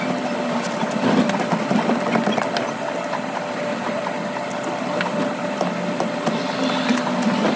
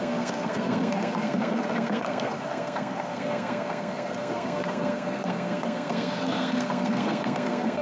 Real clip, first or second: first